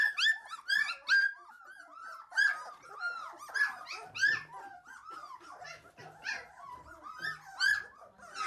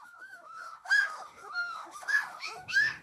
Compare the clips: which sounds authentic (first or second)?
first